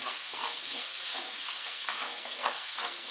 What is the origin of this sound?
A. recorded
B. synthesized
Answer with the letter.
B